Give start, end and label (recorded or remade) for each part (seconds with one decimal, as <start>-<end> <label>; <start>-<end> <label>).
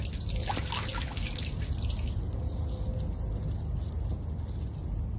0.0-5.2 recorded